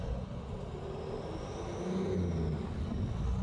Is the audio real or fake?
real